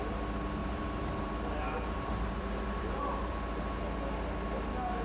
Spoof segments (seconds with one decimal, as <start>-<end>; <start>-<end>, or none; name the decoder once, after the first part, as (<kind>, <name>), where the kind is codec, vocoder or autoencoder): 0.6-3.3 (vocoder, BigVGAN v2)